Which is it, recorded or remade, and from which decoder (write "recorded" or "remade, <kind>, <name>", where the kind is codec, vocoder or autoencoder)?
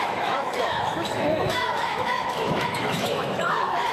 remade, autoencoder, DAC-VAE